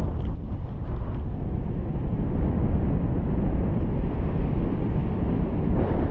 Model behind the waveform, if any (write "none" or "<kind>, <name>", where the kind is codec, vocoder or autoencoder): none